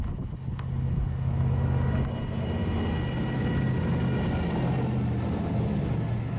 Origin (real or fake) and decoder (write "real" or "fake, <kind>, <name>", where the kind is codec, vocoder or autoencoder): real